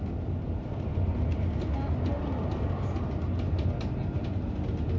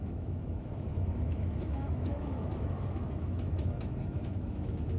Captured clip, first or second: first